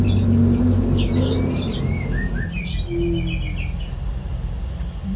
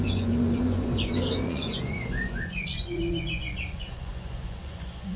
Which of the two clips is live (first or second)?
first